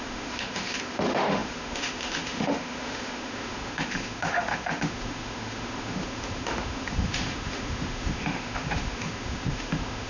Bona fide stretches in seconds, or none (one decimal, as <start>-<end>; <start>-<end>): none